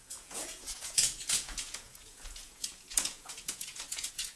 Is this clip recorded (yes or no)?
no